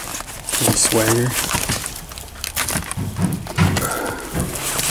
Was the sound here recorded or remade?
recorded